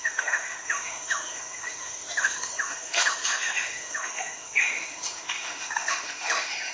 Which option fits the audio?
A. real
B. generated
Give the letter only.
B